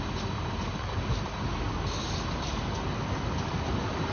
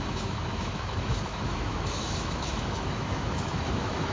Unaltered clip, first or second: first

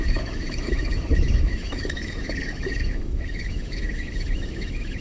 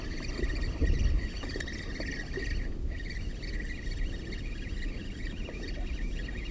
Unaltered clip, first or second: second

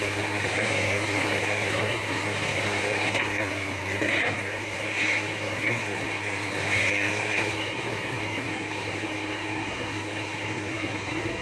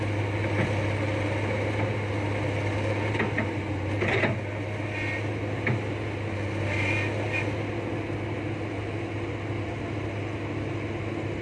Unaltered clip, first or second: second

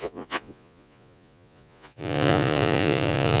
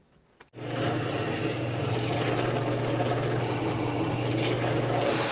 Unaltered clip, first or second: second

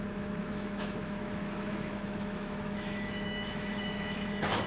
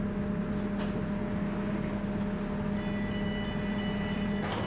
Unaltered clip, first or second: second